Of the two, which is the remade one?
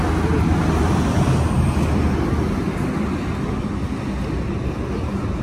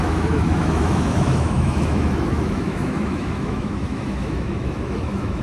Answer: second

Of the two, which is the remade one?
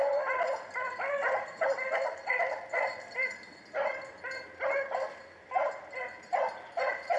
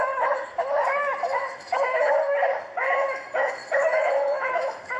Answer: second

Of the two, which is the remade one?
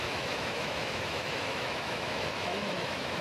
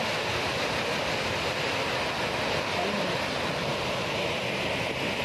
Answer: first